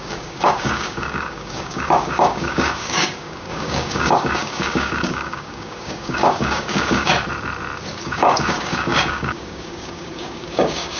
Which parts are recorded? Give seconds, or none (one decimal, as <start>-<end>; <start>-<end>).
7.1-7.9